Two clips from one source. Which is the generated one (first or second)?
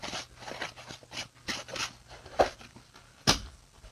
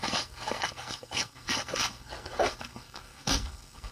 second